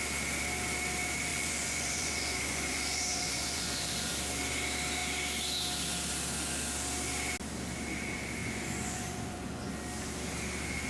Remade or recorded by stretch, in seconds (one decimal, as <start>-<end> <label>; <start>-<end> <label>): 0.0-1.3 recorded; 1.3-4.1 remade; 4.1-8.4 recorded; 8.4-9.7 remade; 9.7-10.9 recorded